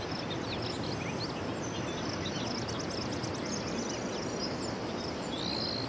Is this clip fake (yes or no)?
no